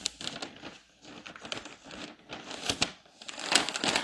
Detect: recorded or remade recorded